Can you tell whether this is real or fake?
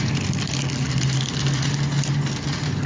real